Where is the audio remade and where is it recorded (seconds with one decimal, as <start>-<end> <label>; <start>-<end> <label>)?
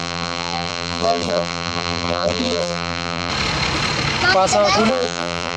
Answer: 0.0-3.3 remade; 3.3-4.9 recorded; 4.9-5.6 remade